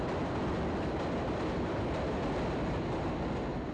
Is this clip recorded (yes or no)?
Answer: yes